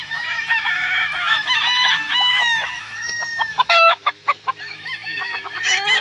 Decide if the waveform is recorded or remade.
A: remade